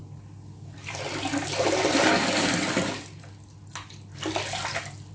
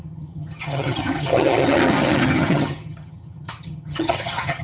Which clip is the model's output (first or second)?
second